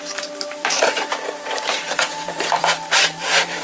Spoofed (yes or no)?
yes